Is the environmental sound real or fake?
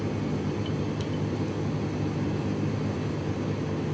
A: real